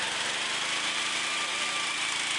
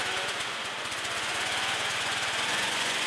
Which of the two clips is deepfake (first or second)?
second